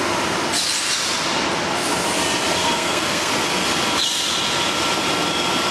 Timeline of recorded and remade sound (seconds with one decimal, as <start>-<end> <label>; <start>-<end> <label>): 0.0-2.6 recorded; 2.6-3.3 remade; 3.3-5.7 recorded

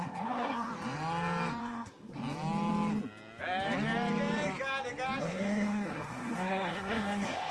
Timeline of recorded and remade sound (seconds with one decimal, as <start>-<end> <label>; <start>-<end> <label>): 0.0-0.7 remade; 0.7-1.6 recorded; 1.6-2.2 remade; 2.2-5.2 recorded; 5.2-7.5 remade

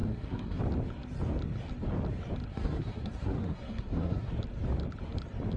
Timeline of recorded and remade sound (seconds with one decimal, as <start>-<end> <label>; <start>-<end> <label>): 0.0-0.6 remade; 0.6-2.5 recorded; 2.5-4.3 remade; 4.3-5.6 recorded

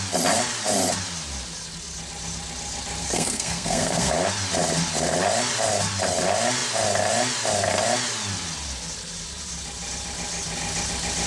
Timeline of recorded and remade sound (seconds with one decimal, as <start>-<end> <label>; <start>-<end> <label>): 0.0-3.0 recorded; 3.0-4.1 remade; 4.1-11.3 recorded

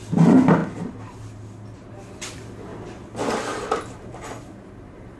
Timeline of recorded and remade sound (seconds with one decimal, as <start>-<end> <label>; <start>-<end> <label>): 0.0-5.2 recorded

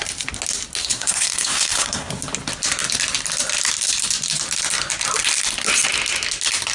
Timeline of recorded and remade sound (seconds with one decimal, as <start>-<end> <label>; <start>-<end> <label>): 0.0-0.8 recorded; 0.8-2.1 remade; 2.1-6.7 recorded